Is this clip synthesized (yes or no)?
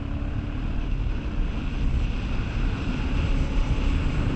no